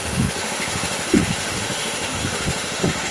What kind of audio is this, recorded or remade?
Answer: remade